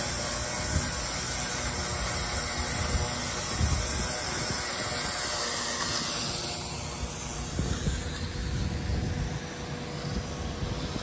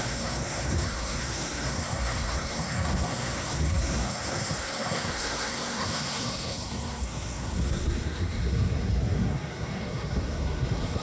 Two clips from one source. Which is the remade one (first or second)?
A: second